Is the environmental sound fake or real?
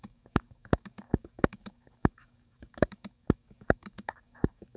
fake